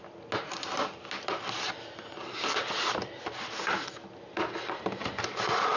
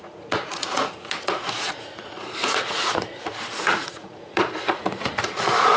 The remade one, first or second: second